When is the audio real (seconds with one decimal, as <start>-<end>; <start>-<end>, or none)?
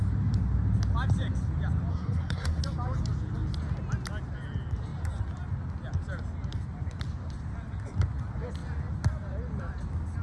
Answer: 0.0-1.9; 2.6-10.2